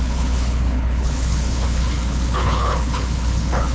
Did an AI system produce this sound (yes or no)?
yes